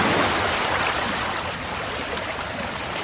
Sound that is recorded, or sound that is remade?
recorded